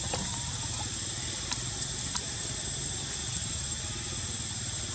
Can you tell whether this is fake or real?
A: fake